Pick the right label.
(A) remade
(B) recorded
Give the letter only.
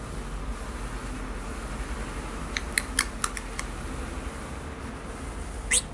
B